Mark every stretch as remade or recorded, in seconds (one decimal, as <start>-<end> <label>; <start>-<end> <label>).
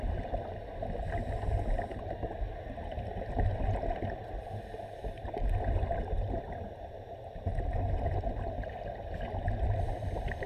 0.0-10.5 recorded